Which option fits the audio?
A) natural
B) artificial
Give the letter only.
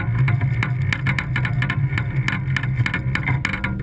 A